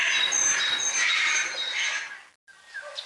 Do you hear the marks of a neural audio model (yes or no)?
no